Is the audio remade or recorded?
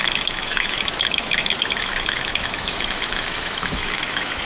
remade